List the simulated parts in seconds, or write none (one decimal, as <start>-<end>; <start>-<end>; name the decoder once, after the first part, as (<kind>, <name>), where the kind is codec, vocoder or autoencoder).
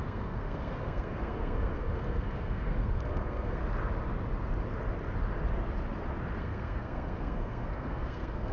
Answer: 0.0-3.6 (codec, SNAC); 6.4-8.5